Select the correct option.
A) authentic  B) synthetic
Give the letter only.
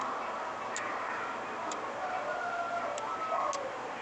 A